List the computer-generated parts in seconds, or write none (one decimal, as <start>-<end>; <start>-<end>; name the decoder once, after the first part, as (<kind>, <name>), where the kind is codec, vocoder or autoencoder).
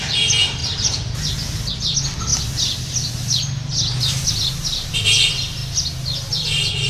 0.6-1.3 (vocoder, BigVGAN v2)